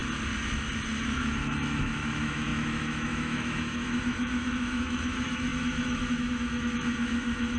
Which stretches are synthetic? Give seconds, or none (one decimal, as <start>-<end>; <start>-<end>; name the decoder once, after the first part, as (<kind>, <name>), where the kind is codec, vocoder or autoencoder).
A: 1.0-7.6 (autoencoder, DAC-VAE)

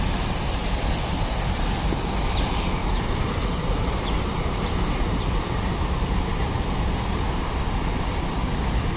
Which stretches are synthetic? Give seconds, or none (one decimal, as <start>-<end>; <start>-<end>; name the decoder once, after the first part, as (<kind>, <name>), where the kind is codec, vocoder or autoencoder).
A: none